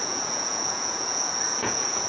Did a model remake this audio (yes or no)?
yes